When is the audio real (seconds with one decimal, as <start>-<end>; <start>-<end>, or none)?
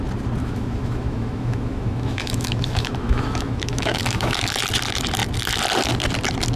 0.0-0.4; 4.4-6.6